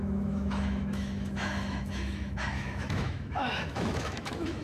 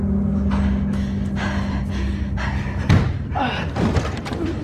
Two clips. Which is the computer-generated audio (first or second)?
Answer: first